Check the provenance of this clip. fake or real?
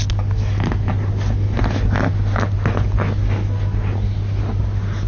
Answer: real